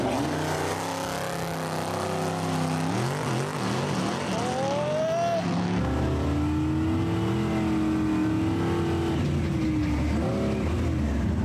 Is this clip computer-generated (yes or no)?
no